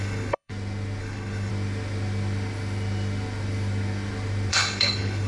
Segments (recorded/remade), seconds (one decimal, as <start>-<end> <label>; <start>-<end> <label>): 0.0-0.5 remade; 0.5-1.0 recorded; 1.0-1.5 remade; 1.5-4.5 recorded; 4.5-5.3 remade